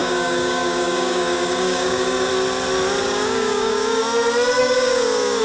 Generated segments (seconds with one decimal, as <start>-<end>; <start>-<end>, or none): 0.0-2.3; 3.0-4.0; 4.6-5.4